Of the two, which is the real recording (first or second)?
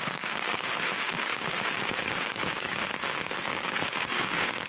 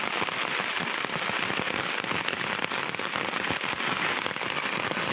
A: second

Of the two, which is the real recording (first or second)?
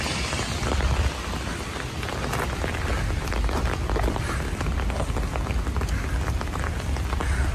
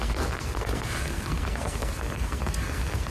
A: first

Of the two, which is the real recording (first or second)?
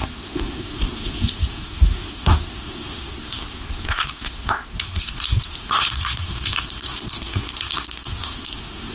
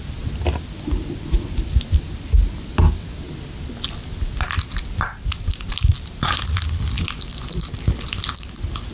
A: second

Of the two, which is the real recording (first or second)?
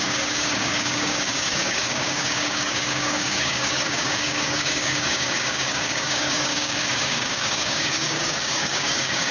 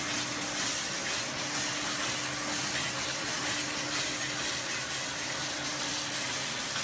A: second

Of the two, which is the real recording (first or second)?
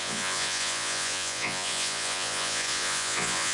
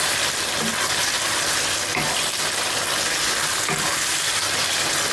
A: second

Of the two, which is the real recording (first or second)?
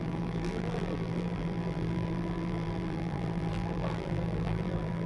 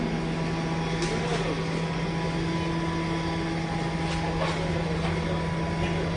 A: second